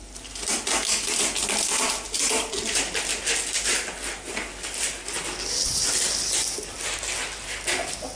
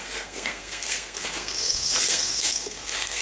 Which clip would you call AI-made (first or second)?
second